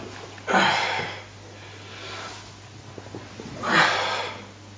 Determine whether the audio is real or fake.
real